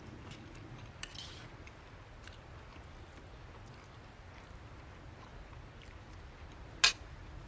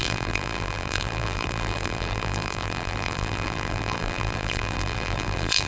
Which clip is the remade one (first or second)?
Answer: second